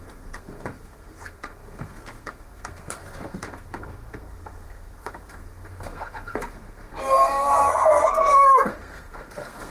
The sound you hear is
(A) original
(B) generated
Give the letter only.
B